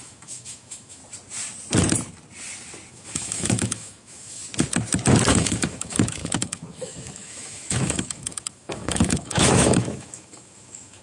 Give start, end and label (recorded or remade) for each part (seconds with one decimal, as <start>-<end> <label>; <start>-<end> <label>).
0.0-1.0 remade; 1.0-2.9 recorded; 2.9-4.4 remade; 4.4-5.3 recorded; 5.3-11.0 remade